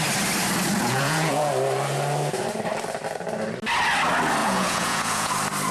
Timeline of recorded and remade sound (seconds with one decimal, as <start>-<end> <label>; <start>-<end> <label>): 0.0-0.8 recorded; 0.8-1.5 remade; 1.5-4.4 recorded; 4.4-5.3 remade; 5.3-5.7 recorded